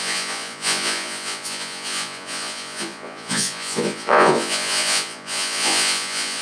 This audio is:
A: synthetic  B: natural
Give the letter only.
A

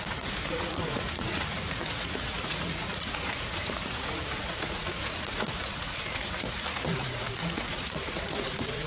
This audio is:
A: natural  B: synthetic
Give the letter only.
B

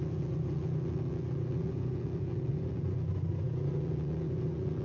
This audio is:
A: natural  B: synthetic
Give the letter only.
B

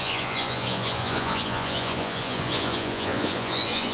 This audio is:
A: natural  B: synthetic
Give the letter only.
B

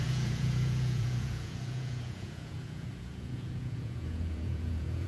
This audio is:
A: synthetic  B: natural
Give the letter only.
A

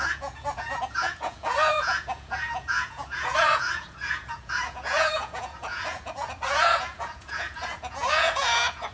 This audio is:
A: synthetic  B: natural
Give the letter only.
A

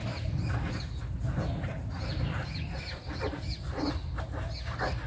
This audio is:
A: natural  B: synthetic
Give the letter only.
A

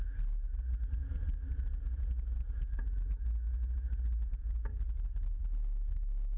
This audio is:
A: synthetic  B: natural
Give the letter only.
B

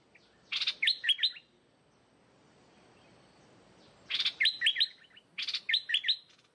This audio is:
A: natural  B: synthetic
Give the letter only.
A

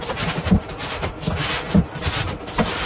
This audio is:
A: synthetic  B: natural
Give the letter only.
B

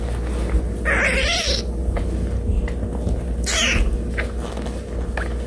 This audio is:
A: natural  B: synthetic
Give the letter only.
A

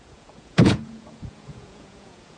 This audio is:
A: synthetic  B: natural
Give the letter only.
A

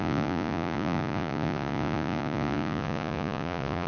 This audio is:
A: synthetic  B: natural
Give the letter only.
A